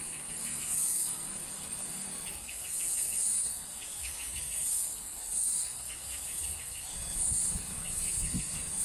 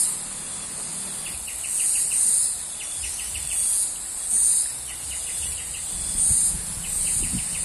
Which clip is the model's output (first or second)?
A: first